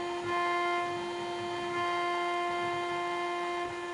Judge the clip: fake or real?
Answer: real